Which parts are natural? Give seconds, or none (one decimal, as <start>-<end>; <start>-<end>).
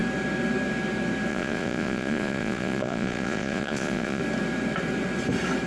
0.0-1.3; 4.2-5.7